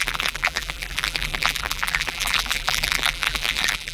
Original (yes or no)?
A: no